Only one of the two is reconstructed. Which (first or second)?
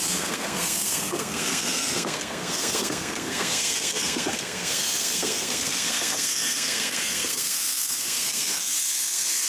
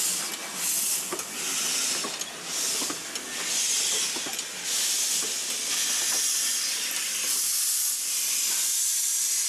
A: first